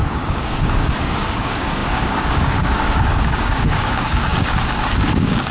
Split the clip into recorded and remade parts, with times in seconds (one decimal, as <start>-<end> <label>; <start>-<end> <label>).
0.0-5.5 remade